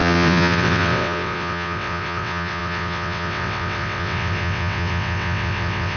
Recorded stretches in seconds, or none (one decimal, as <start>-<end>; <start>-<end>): none